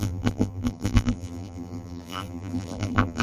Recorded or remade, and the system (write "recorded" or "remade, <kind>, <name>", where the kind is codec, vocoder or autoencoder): remade, vocoder, BigVGAN v2